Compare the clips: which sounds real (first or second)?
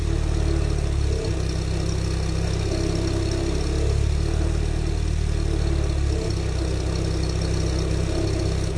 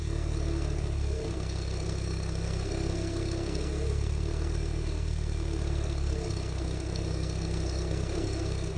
first